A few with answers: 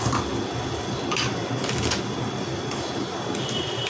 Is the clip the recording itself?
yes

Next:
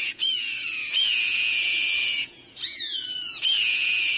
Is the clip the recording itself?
no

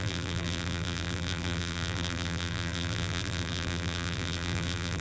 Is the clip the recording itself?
no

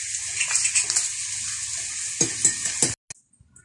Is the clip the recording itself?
yes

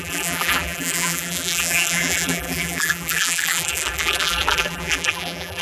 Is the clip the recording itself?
no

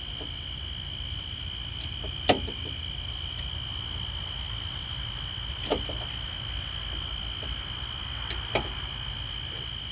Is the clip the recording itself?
yes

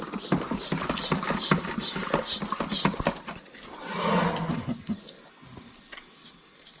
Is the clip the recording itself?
yes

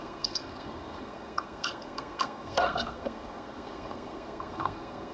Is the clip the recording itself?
no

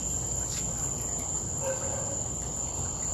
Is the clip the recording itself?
yes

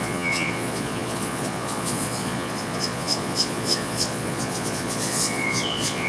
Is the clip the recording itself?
no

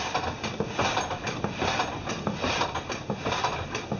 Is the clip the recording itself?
yes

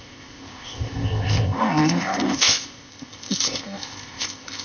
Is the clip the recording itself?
no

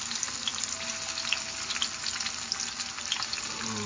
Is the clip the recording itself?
yes